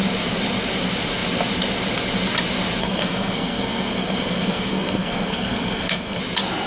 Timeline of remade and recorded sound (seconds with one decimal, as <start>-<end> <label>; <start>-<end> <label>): 0.0-2.8 recorded; 2.8-6.2 remade; 6.2-6.7 recorded